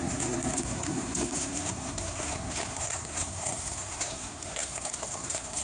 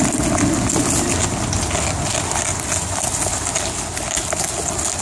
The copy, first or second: first